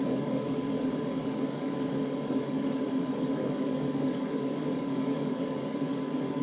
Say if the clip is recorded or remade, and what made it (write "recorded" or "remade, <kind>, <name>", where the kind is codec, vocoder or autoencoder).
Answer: remade, codec, DAC